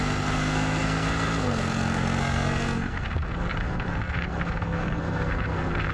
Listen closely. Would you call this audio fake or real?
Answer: fake